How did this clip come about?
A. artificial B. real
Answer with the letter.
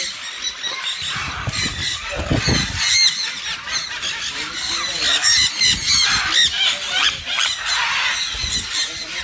B